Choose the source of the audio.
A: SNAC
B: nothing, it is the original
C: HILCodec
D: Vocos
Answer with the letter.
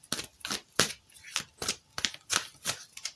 B